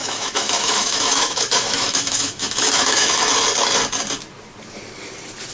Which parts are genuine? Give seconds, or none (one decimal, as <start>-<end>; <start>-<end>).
3.3-5.5